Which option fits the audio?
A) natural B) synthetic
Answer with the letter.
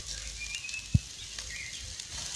A